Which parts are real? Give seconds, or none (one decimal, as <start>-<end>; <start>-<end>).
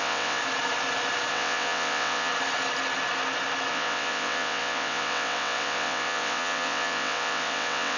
0.4-1.3; 2.3-3.7